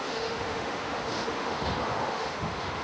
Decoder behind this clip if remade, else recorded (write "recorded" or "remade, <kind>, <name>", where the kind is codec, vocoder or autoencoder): remade, autoencoder, DAC-VAE